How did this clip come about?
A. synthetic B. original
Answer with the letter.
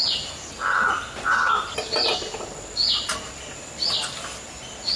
B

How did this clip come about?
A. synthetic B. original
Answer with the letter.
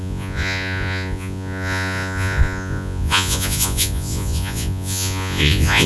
A